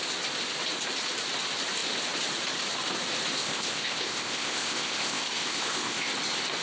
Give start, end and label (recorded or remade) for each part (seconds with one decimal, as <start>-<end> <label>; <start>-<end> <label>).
0.0-3.4 recorded; 3.4-6.1 remade; 6.1-6.6 recorded